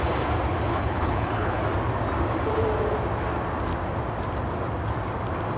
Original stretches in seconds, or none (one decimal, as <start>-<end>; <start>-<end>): 0.0-0.7; 1.6-5.6